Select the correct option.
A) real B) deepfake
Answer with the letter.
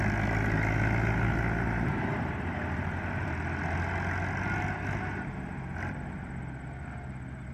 A